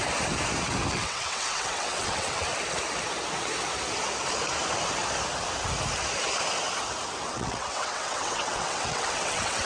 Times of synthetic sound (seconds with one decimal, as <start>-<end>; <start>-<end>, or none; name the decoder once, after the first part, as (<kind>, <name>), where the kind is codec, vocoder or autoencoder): 0.9-2.5 (vocoder, WaveNeXt); 7.3-9.6